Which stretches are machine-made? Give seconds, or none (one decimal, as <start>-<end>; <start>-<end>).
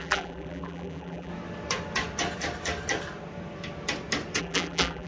0.0-1.3; 4.4-5.1